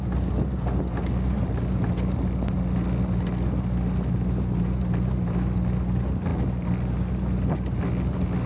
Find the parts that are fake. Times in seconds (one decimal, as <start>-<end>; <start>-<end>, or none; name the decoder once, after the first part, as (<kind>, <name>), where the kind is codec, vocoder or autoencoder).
none